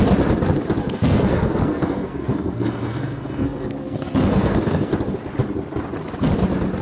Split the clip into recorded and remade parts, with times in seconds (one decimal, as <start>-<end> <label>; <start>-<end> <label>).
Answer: 0.0-0.8 recorded; 0.8-4.9 remade; 4.9-6.8 recorded